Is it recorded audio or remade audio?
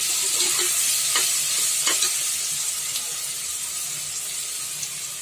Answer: recorded